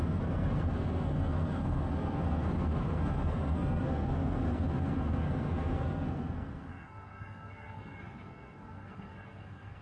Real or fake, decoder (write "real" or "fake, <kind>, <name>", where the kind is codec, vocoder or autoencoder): fake, codec, SNAC